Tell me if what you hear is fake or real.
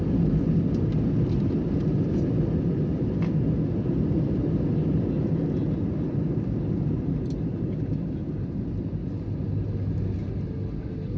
real